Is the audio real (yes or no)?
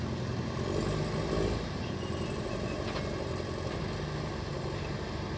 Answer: yes